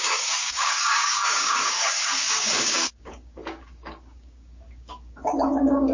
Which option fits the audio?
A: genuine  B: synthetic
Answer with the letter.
B